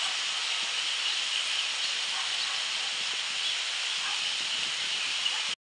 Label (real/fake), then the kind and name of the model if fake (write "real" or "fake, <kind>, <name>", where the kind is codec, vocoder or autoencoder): real